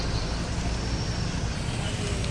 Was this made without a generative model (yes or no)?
yes